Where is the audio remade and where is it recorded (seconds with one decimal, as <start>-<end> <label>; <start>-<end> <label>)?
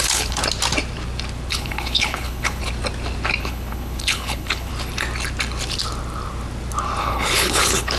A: 0.0-0.4 remade; 0.4-1.5 recorded; 1.5-2.6 remade; 2.6-3.4 recorded; 3.4-4.7 remade; 4.7-7.0 recorded; 7.0-8.0 remade